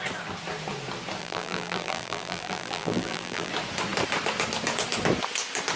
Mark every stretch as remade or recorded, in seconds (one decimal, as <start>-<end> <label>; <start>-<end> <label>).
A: 0.0-1.2 recorded; 1.2-3.5 remade; 3.5-5.8 recorded